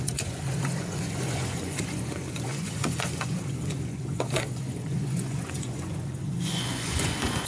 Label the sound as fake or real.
fake